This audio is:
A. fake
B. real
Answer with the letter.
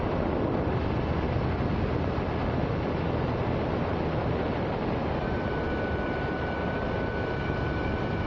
B